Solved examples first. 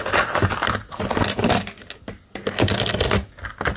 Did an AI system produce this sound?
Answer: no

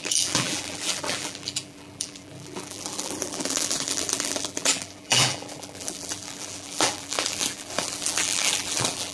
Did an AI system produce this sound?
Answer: yes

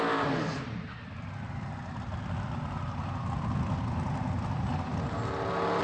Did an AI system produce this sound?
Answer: no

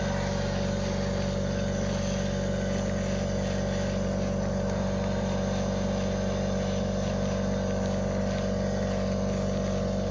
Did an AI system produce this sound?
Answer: no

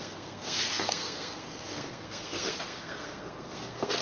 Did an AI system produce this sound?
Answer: yes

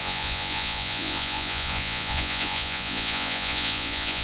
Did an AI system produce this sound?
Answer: yes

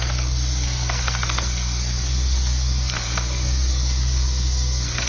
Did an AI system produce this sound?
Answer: yes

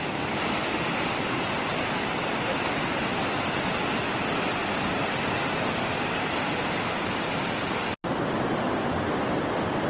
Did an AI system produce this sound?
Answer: no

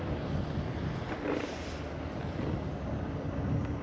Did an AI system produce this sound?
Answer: no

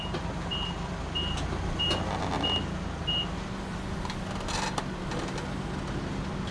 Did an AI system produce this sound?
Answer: no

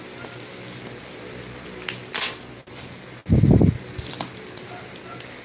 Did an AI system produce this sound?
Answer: no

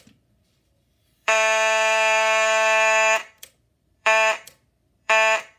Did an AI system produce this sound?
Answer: yes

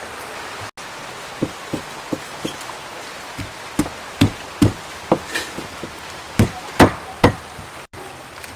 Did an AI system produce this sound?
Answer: no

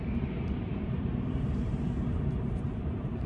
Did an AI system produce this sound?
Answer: yes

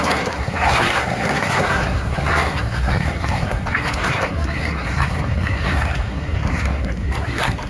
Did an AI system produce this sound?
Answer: yes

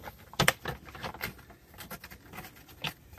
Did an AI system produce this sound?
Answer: no